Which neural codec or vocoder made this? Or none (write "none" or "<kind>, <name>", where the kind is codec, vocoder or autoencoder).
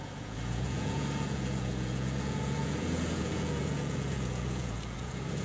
vocoder, Vocos